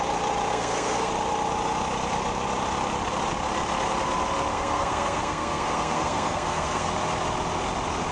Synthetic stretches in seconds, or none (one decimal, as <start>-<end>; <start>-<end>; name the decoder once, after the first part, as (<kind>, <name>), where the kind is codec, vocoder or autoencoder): 0.5-1.1 (codec, SNAC); 4.5-6.9